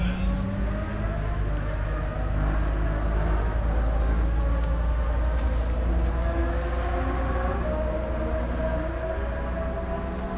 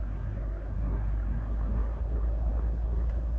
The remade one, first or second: second